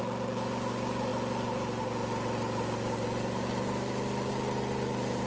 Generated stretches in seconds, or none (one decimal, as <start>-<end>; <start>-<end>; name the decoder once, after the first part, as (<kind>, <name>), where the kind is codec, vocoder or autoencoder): none